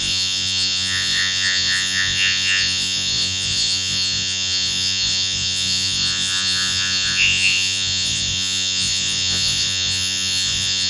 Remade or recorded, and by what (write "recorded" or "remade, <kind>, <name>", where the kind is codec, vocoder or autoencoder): remade, vocoder, Vocos